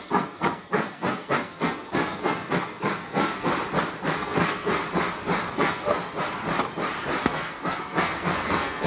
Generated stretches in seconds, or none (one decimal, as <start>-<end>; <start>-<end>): 0.0-3.5; 4.0-4.8; 5.5-6.0; 7.2-8.9